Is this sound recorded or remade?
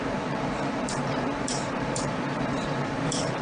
remade